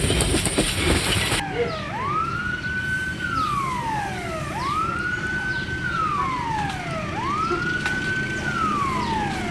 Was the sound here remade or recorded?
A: recorded